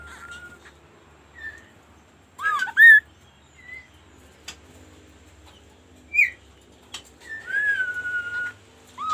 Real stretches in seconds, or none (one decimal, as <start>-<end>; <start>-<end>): 0.0-9.1